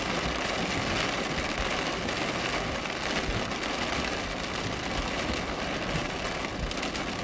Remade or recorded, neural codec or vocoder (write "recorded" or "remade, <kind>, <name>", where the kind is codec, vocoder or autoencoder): recorded